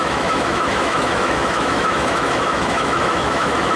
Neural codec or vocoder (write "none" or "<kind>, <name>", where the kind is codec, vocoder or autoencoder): autoencoder, DAC-VAE